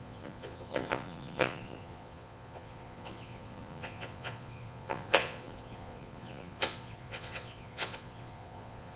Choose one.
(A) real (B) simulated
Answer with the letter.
B